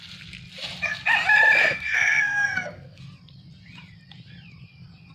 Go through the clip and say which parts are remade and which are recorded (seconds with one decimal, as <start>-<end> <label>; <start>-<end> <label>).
0.0-1.6 recorded; 1.6-3.0 remade; 3.0-5.1 recorded